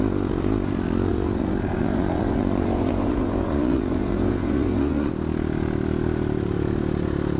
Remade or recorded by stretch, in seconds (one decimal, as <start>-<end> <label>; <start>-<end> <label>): 0.0-1.1 recorded; 1.1-5.1 remade; 5.1-7.4 recorded